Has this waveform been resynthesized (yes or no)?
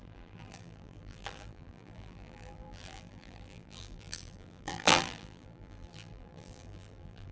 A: yes